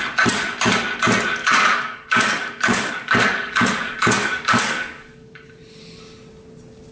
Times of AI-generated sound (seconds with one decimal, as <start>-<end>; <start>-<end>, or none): 1.4-5.5